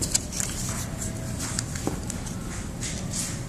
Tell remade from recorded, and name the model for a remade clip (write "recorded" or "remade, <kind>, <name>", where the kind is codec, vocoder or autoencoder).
remade, vocoder, BigVGAN v2